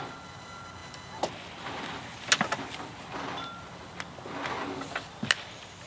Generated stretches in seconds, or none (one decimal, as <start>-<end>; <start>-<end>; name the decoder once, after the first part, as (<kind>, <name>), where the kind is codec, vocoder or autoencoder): none